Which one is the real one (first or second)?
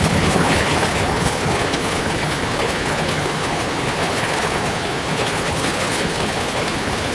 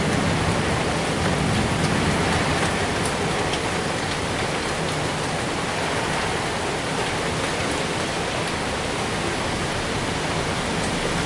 second